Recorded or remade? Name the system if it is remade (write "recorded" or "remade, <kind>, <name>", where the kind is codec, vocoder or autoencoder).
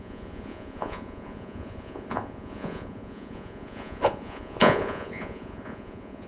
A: remade, vocoder, Vocos